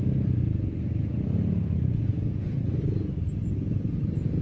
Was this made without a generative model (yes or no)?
yes